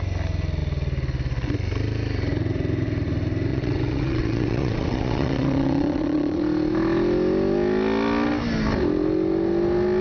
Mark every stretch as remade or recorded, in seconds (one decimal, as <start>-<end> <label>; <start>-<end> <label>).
0.0-3.5 recorded; 3.5-6.4 remade; 6.4-10.0 recorded